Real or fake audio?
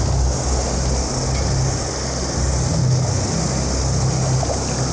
real